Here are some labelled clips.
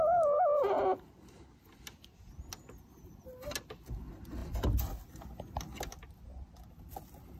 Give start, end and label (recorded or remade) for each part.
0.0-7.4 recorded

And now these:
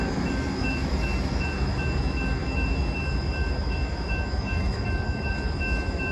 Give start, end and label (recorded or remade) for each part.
0.0-6.1 remade

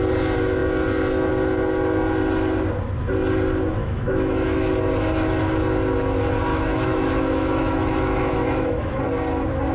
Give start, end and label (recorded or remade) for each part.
0.0-3.8 recorded; 3.8-4.7 remade; 4.7-6.5 recorded; 6.5-9.0 remade; 9.0-9.7 recorded

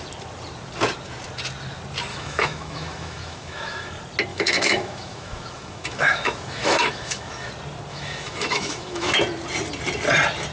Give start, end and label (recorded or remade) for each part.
0.0-2.1 recorded; 2.1-3.9 remade; 3.9-4.3 recorded; 4.3-7.5 remade; 7.5-7.9 recorded; 7.9-9.2 remade; 9.2-10.5 recorded

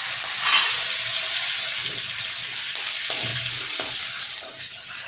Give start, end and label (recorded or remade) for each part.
0.0-5.1 recorded

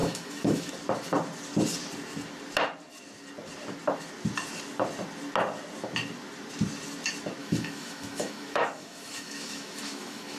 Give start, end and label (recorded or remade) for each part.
0.0-0.7 remade; 0.7-7.4 recorded; 7.4-10.4 remade